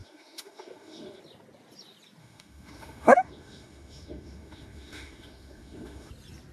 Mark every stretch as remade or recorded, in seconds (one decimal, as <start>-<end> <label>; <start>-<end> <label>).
0.0-1.2 remade; 1.2-2.2 recorded; 2.2-6.1 remade; 6.1-6.5 recorded